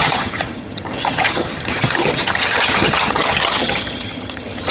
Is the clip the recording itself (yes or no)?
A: no